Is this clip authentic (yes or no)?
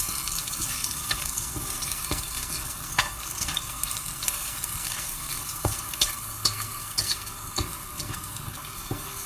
no